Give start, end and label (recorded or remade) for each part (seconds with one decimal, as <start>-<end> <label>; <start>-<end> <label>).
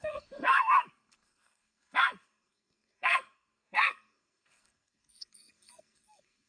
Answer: 0.0-6.5 remade